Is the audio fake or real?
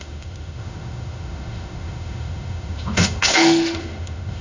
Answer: fake